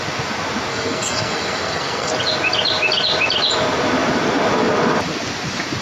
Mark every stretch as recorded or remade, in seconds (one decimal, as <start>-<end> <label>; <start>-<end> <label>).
0.0-0.7 recorded; 0.7-2.1 remade; 2.1-5.8 recorded